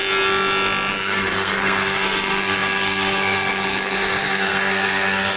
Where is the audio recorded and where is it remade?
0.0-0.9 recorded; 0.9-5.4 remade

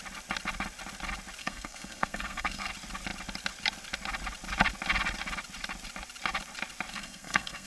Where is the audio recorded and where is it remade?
0.0-1.4 recorded; 1.4-2.7 remade; 2.7-6.9 recorded; 6.9-7.7 remade

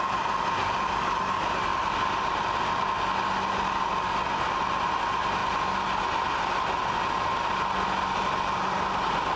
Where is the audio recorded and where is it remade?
0.0-9.4 recorded